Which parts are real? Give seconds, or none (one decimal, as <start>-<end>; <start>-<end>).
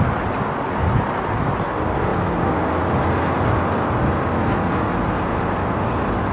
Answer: 0.0-6.3